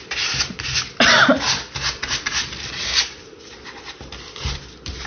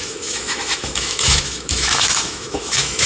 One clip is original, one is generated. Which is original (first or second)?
first